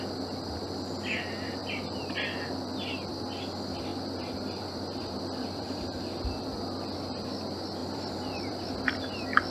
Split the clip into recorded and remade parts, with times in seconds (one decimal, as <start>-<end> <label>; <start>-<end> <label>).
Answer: 0.0-3.9 recorded; 3.9-6.6 remade; 6.6-7.8 recorded; 7.8-8.7 remade; 8.7-9.5 recorded